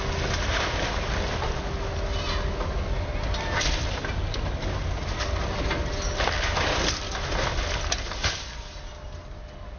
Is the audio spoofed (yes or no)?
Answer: no